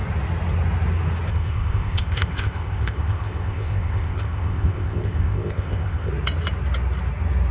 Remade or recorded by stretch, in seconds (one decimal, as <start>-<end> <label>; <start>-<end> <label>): 0.0-1.3 recorded; 1.3-6.1 remade; 6.1-7.5 recorded